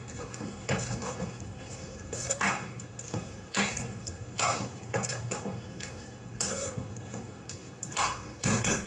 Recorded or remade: remade